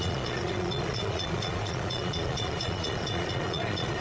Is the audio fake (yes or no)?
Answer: yes